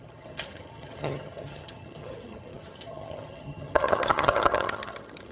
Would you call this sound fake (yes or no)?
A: yes